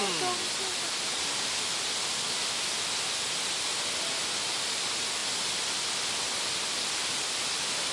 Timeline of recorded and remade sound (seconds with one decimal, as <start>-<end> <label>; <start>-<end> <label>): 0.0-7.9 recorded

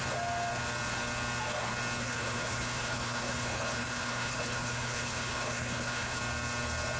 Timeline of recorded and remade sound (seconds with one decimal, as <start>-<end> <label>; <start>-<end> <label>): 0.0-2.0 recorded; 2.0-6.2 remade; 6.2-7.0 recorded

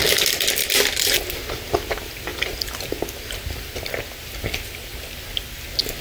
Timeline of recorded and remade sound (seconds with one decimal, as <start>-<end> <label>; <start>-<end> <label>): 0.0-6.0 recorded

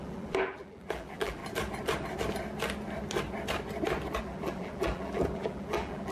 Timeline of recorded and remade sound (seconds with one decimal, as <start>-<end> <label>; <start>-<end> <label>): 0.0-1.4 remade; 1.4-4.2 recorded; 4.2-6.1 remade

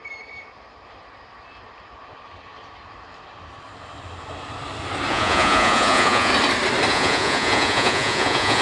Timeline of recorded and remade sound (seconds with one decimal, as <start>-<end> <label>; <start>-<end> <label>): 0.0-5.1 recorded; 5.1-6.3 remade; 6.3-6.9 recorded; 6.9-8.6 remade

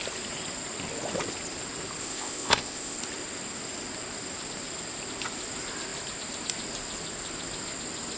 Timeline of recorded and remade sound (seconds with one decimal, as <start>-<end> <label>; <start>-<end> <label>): 0.0-2.0 recorded; 2.0-3.0 remade; 3.0-8.2 recorded